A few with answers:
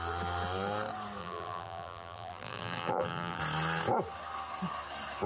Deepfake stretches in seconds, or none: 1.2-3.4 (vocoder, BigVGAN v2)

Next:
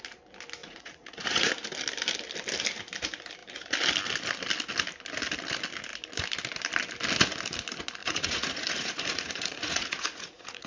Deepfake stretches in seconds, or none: 0.6-1.5 (vocoder, Vocos); 8.0-10.7

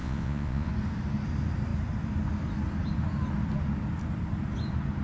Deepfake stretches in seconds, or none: 0.0-0.7 (vocoder, Vocos)

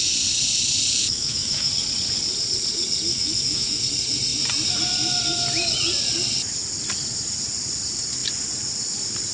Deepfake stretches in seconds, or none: 1.0-1.7 (autoencoder, DAC-VAE); 3.1-3.8